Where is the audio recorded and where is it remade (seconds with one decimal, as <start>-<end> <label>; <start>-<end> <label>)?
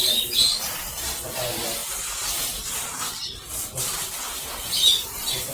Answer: 0.0-5.5 remade